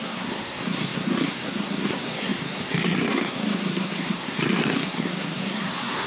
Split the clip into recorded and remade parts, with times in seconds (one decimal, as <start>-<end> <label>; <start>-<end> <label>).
0.0-6.1 remade